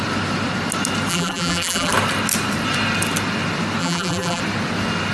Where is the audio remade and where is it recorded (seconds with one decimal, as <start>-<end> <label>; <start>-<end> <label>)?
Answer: 0.0-1.1 recorded; 1.1-1.9 remade; 1.9-3.8 recorded; 3.8-4.4 remade; 4.4-5.1 recorded